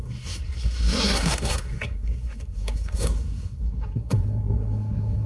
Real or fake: fake